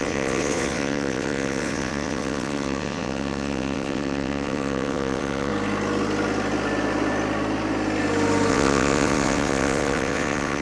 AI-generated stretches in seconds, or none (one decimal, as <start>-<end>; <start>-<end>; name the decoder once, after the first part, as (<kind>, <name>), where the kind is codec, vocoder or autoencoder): 0.0-5.5 (vocoder, WaveNeXt); 8.5-10.6